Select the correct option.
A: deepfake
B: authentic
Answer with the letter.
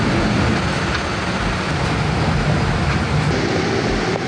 B